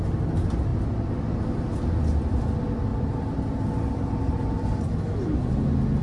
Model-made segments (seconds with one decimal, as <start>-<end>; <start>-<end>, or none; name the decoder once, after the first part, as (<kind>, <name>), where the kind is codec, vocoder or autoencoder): none